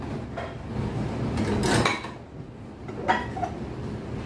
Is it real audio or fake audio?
real